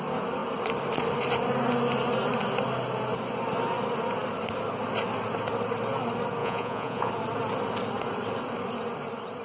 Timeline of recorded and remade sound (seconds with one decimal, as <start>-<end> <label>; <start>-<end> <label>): 0.0-6.4 recorded; 6.4-7.1 remade; 7.1-9.4 recorded